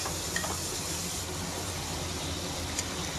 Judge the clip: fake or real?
real